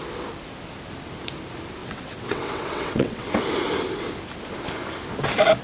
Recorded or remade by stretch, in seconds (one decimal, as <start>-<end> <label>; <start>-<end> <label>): 0.0-1.8 recorded; 1.8-3.4 remade; 3.4-5.6 recorded